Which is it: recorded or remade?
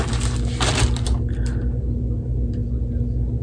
recorded